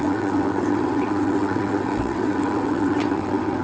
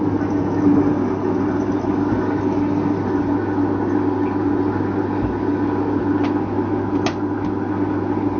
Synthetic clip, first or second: first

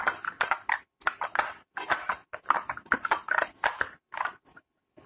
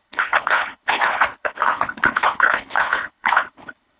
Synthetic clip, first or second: second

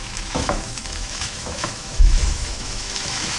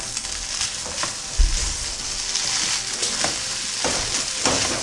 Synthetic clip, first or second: first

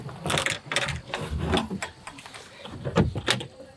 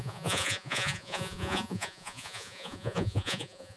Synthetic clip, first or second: second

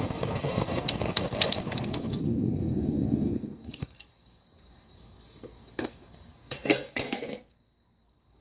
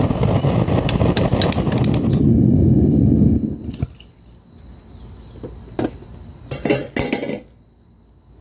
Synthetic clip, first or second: first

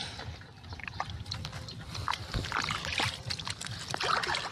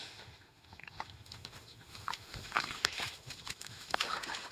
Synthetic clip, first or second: second